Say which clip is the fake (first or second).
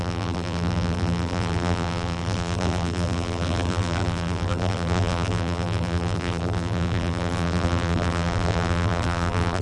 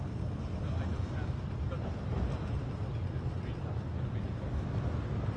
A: first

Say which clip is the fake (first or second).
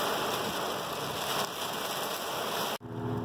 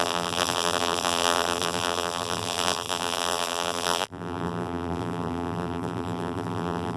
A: second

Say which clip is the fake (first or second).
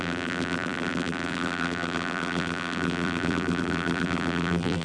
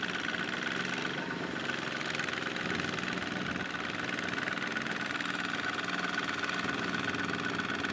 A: first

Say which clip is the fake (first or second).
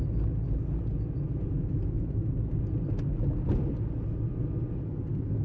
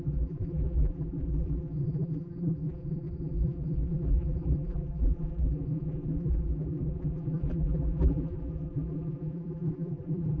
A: second